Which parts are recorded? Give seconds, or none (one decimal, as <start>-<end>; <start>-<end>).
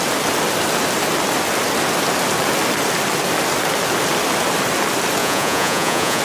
0.0-5.2